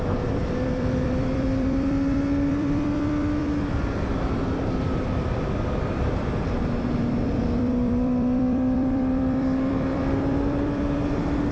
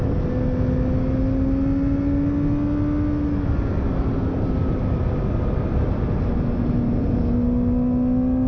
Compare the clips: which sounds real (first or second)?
second